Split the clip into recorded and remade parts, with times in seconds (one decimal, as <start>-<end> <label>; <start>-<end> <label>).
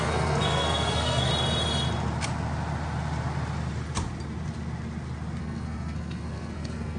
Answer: 0.0-1.3 remade; 1.3-5.4 recorded; 5.4-7.0 remade